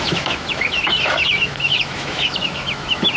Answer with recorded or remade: remade